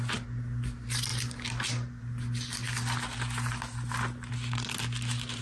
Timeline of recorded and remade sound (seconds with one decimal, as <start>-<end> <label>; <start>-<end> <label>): 0.0-5.4 recorded